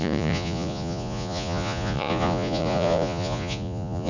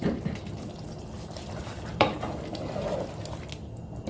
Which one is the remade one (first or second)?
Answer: first